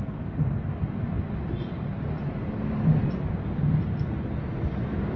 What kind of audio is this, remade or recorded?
recorded